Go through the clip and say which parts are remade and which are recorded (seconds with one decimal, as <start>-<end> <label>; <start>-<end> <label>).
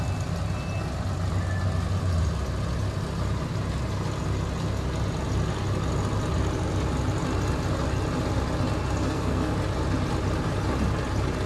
0.0-9.0 recorded; 9.0-9.5 remade; 9.5-11.5 recorded